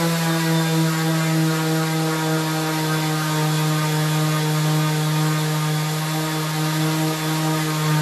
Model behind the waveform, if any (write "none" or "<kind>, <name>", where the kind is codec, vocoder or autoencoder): none